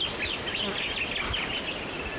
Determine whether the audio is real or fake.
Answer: real